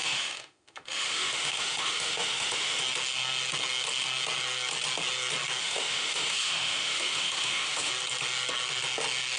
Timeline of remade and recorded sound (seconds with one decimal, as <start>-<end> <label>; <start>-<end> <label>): 0.0-2.8 remade; 2.8-5.6 recorded; 5.6-7.9 remade; 7.9-9.4 recorded